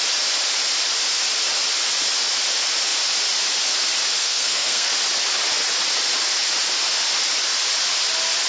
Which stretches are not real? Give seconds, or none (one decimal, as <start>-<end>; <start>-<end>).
4.2-4.9